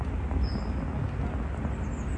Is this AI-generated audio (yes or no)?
no